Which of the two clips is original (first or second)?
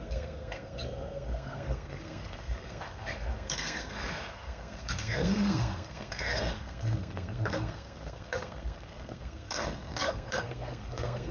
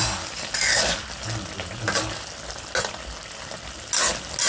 second